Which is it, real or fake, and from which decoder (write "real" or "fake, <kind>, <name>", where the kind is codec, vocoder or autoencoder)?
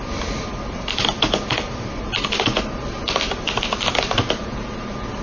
real